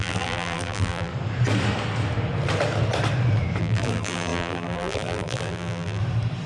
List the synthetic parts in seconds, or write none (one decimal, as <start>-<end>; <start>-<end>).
0.0-1.1; 3.6-6.0